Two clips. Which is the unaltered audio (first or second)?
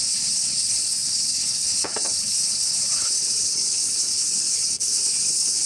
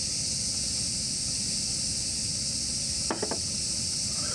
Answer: second